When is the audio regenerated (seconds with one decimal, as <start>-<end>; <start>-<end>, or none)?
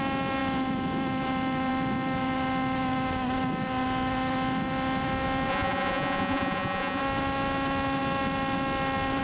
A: 5.5-7.0